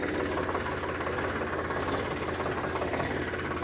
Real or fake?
real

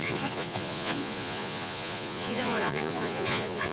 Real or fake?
fake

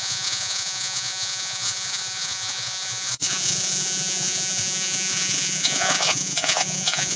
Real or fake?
fake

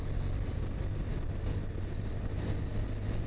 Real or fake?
real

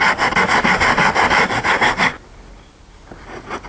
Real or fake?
real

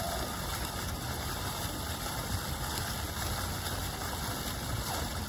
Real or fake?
real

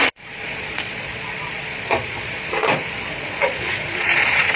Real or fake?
fake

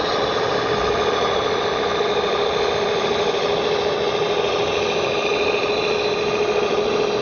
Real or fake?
real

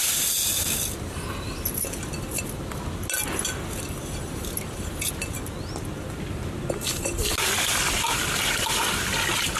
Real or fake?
real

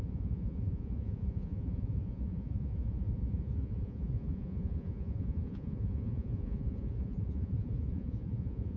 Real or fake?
fake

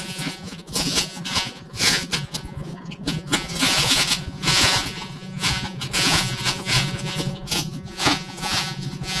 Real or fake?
fake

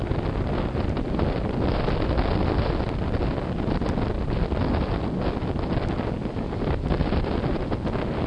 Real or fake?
real